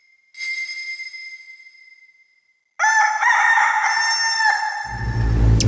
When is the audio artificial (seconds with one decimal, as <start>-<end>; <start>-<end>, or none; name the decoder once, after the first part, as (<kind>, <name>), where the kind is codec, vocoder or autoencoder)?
none